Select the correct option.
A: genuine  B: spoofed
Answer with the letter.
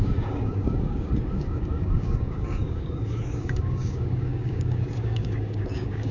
B